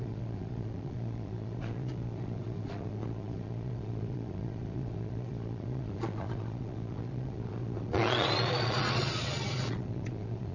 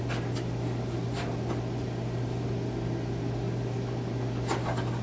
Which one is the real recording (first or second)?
second